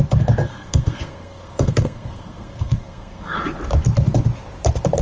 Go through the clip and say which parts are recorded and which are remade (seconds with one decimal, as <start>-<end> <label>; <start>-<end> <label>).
0.0-0.4 recorded; 0.4-3.4 remade; 3.4-5.0 recorded

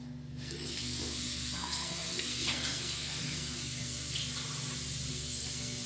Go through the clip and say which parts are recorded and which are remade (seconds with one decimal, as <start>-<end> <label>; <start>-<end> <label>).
0.0-4.2 remade; 4.2-5.1 recorded; 5.1-5.9 remade

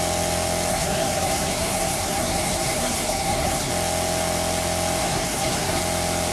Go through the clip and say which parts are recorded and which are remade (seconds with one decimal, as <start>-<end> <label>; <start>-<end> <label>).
0.0-0.7 recorded; 0.7-3.7 remade; 3.7-5.0 recorded; 5.0-5.8 remade; 5.8-6.3 recorded

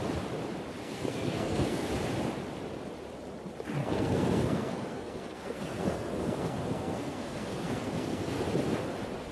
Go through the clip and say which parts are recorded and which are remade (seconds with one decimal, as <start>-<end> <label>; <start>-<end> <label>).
0.0-0.8 recorded; 0.8-1.9 remade; 1.9-3.8 recorded; 3.8-8.4 remade; 8.4-9.3 recorded

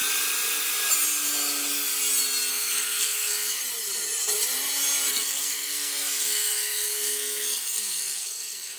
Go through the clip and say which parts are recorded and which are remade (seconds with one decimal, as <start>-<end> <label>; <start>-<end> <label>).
0.0-2.5 recorded; 2.5-3.6 remade; 3.6-5.1 recorded; 5.1-8.8 remade